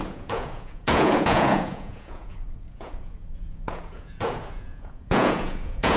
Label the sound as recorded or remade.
remade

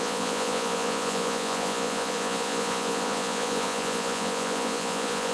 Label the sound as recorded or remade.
remade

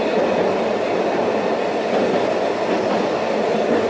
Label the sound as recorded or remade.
recorded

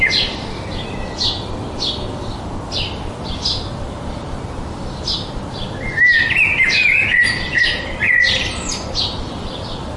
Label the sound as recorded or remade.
recorded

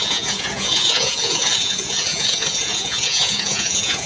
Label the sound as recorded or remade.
remade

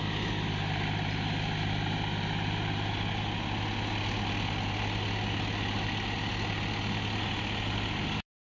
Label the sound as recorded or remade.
recorded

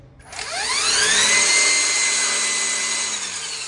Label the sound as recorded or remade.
recorded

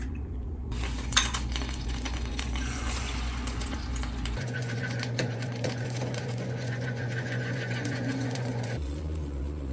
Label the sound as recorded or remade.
remade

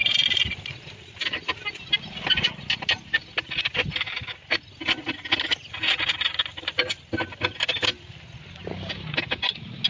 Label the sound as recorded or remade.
recorded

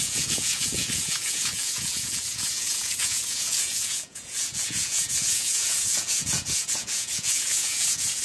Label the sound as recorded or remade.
remade